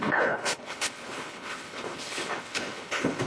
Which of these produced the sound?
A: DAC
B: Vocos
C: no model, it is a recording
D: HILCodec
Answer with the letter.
D